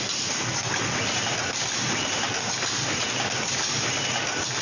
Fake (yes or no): no